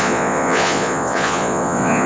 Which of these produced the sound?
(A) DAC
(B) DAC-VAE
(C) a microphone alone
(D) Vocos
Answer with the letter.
D